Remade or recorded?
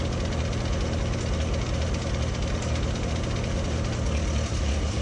recorded